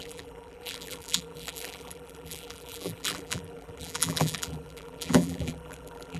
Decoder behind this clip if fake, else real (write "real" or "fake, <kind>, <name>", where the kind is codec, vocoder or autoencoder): fake, vocoder, BigVGAN v2